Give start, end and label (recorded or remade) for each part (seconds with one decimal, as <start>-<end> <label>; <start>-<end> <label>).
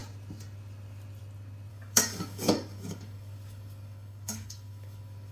0.0-1.7 recorded; 1.7-5.3 remade